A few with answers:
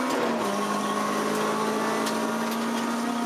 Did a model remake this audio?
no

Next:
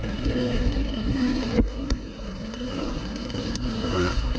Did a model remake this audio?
yes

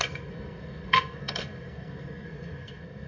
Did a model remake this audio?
yes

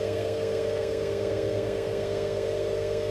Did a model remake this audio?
yes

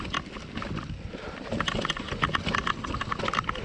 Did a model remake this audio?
no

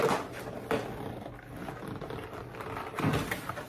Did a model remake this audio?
no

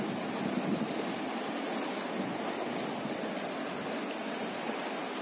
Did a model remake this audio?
no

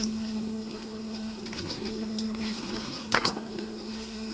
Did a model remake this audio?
yes